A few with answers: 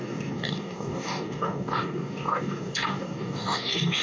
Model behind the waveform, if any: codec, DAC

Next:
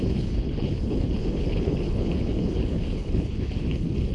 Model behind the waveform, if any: codec, HILCodec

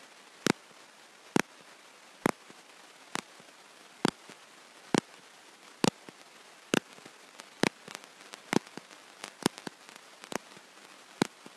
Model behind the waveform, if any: none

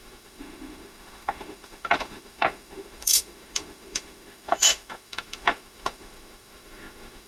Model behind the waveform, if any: autoencoder, DAC-VAE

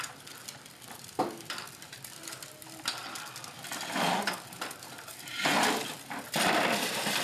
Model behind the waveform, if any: vocoder, BigVGAN v2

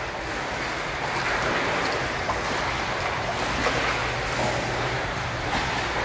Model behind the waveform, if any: none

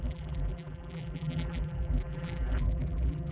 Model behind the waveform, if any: vocoder, BigVGAN v2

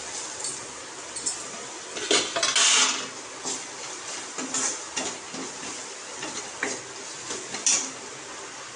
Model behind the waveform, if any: none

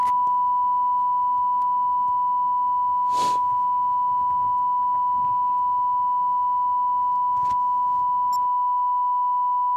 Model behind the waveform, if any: none